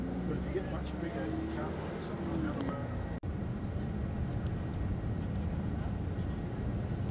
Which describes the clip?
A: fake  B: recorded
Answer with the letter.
B